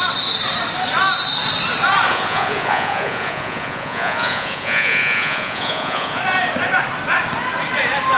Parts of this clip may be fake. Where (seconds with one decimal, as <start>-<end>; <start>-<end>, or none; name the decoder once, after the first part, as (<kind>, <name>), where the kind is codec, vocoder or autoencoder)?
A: 2.1-6.2 (vocoder, Vocos)